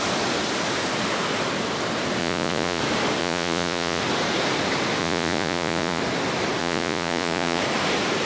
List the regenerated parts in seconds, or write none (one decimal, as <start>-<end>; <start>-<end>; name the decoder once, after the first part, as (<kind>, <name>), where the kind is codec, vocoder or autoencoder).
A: 2.2-2.8 (vocoder, Vocos); 3.2-4.0; 5.0-6.0; 6.6-7.6